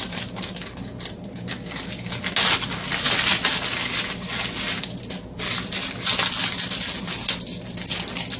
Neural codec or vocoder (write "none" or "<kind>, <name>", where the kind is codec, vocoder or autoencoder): none